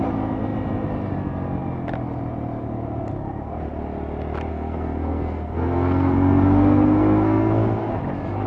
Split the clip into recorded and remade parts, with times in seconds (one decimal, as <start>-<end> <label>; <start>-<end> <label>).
0.0-4.5 recorded; 4.5-7.9 remade; 7.9-8.5 recorded